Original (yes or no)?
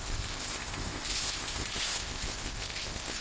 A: no